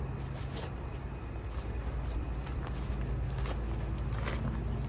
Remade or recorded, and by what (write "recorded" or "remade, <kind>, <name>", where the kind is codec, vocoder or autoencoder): recorded